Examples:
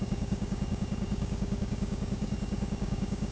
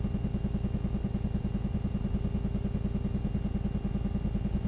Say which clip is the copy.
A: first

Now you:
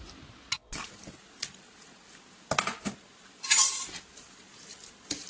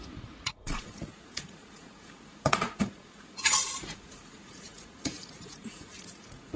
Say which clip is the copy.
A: second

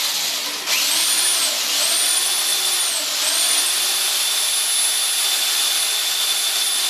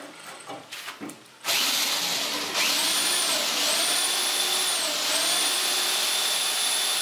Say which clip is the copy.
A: second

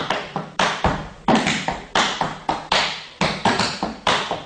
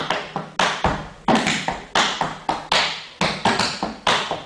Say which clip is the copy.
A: first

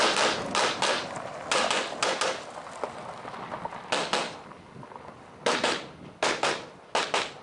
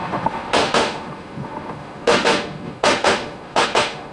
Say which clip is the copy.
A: second